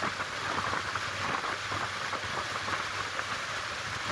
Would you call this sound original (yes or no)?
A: yes